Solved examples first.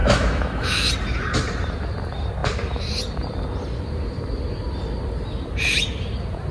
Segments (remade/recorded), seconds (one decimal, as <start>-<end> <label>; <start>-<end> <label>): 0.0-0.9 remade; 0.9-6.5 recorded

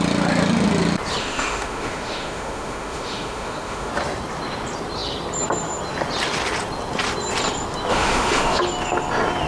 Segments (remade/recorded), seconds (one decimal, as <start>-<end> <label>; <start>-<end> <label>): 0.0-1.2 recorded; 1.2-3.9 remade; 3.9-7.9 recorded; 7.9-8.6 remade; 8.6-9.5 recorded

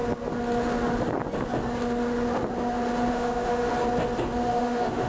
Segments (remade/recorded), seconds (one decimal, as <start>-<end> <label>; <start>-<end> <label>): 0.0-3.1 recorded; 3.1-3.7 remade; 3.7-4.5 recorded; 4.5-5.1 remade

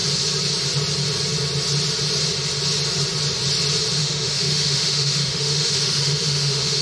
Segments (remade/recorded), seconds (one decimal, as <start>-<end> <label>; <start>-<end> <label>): 0.0-4.0 recorded; 4.0-6.8 remade

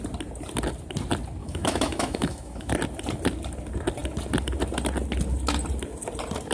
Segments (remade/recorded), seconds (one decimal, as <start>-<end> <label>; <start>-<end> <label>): 0.0-1.4 recorded; 1.4-2.7 remade; 2.7-6.5 recorded